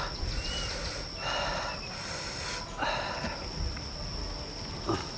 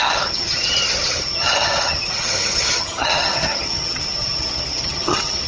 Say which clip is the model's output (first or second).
second